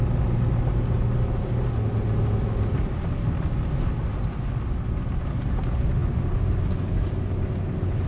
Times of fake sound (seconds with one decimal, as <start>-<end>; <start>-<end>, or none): none